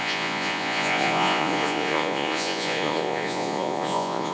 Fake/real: fake